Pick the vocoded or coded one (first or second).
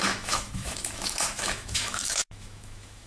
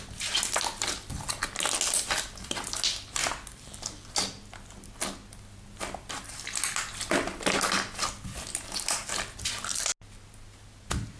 first